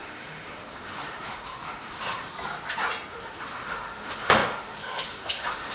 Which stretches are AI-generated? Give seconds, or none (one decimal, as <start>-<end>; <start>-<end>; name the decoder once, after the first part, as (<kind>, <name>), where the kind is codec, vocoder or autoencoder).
0.0-2.3 (autoencoder, DAC-VAE); 3.1-5.7